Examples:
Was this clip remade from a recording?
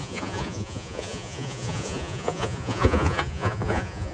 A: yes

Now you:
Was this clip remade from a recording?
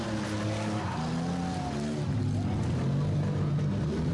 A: no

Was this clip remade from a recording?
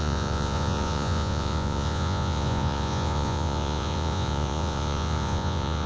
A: yes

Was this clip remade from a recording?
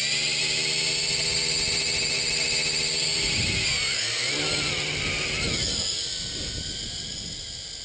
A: no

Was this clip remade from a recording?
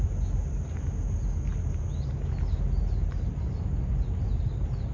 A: no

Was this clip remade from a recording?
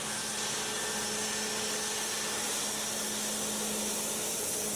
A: no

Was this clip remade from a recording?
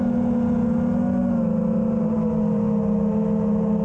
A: no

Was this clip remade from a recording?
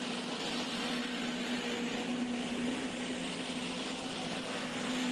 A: no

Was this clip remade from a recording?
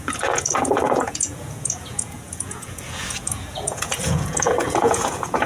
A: yes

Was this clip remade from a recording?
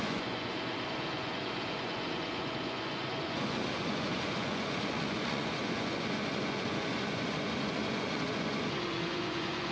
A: yes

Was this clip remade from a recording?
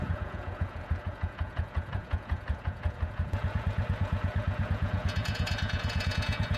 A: yes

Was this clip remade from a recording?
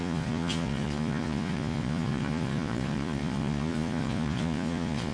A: yes